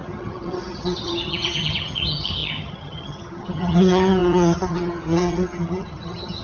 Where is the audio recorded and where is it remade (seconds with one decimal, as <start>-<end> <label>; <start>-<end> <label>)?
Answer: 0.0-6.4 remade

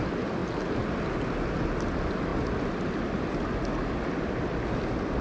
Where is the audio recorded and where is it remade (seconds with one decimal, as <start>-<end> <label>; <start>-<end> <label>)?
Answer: 0.0-5.2 recorded

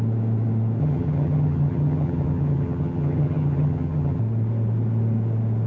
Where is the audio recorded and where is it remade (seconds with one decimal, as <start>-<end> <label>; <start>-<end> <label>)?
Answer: 0.0-0.8 recorded; 0.8-4.2 remade; 4.2-5.7 recorded

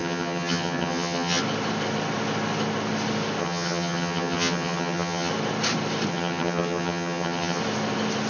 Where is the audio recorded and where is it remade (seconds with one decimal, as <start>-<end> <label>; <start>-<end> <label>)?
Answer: 0.0-1.4 remade; 1.4-3.4 recorded; 3.4-5.3 remade; 5.3-6.1 recorded; 6.1-7.6 remade; 7.6-8.3 recorded

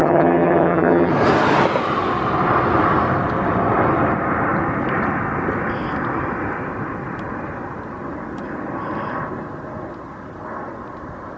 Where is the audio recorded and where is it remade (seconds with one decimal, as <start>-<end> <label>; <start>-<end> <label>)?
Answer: 0.0-1.1 remade; 1.1-11.4 recorded

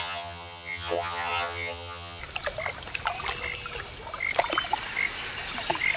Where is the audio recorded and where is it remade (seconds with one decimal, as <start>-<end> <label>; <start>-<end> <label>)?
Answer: 0.0-2.2 remade; 2.2-6.0 recorded

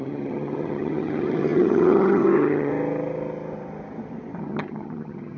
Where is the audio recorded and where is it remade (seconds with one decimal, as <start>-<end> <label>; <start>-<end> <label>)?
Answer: 0.0-2.7 remade; 2.7-4.4 recorded; 4.4-5.4 remade

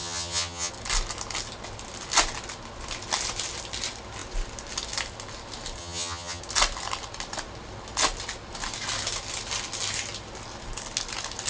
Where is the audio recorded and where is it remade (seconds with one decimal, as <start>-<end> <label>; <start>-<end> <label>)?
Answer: 0.0-0.7 remade; 0.7-5.8 recorded; 5.8-6.4 remade; 6.4-11.5 recorded